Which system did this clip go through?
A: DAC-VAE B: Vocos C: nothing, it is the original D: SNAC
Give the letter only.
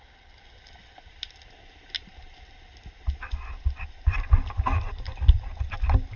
C